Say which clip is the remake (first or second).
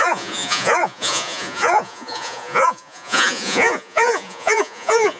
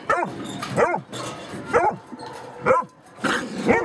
first